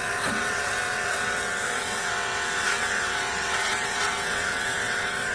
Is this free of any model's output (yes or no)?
no